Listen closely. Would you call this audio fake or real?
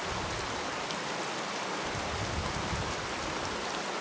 real